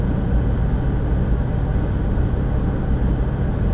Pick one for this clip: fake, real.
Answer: real